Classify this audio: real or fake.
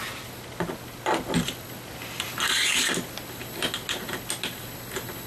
real